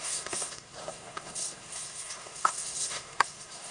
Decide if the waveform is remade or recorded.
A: remade